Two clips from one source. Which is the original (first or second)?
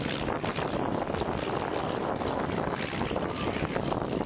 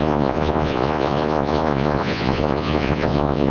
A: first